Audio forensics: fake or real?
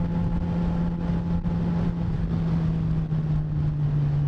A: real